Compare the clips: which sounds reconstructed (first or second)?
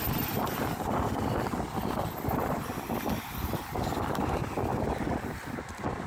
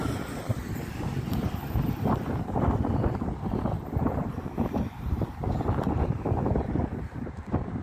second